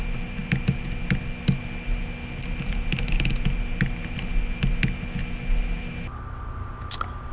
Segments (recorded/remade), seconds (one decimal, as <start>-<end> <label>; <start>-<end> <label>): 0.0-7.3 recorded